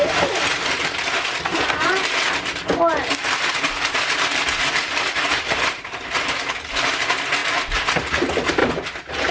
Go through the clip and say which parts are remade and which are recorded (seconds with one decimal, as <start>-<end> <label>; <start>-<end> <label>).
0.0-1.5 recorded; 1.5-5.9 remade; 5.9-8.6 recorded; 8.6-9.3 remade